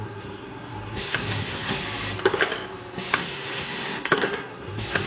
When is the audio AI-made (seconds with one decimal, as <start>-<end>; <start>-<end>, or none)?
0.0-1.8; 3.1-5.1